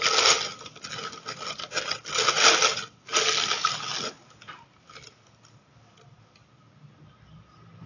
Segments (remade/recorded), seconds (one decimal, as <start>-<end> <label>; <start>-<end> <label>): 0.0-7.9 recorded